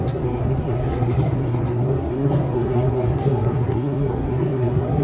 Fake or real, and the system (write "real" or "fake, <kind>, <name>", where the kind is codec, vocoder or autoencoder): fake, codec, SNAC